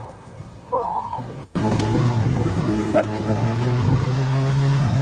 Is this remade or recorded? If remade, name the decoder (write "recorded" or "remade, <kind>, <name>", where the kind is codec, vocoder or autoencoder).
remade, codec, SNAC